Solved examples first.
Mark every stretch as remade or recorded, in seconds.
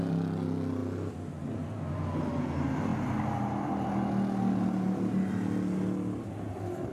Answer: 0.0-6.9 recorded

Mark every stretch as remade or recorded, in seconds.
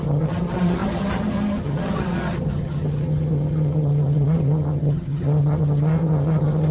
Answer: 0.0-6.7 remade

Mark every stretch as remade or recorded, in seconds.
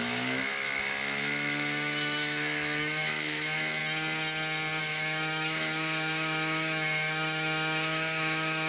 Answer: 0.0-3.8 remade; 3.8-4.8 recorded; 4.8-8.7 remade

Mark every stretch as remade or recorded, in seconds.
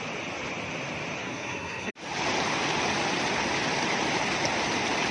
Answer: 0.0-1.2 recorded; 1.2-1.9 remade; 1.9-5.1 recorded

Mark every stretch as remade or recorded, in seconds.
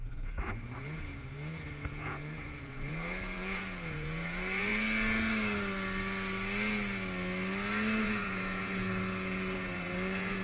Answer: 0.0-4.7 remade; 4.7-8.0 recorded; 8.0-10.4 remade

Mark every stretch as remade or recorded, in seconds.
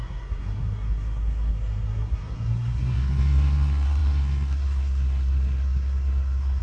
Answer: 0.0-6.6 remade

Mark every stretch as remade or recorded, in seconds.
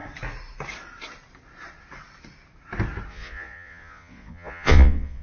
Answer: 0.0-3.1 recorded; 3.1-5.2 remade